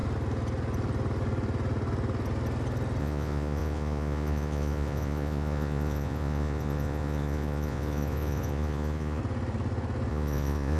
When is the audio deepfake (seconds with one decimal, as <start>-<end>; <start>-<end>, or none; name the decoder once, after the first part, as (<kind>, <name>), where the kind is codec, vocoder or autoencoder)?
3.0-9.2 (vocoder, Vocos); 10.1-10.8